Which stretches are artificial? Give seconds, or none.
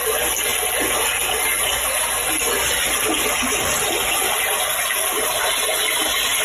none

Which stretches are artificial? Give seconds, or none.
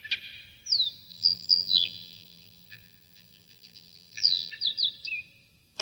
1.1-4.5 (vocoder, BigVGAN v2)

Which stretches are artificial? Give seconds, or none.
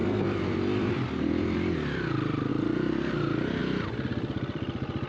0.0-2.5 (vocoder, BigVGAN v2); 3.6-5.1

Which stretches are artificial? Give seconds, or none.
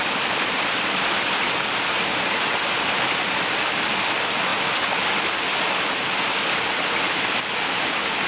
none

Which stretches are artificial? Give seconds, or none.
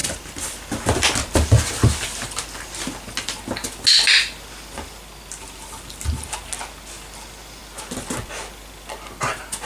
none